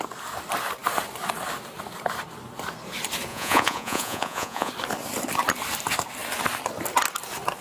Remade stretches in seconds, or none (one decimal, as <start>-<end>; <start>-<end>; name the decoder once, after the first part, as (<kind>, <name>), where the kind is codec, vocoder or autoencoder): 3.3-4.7 (vocoder, Vocos)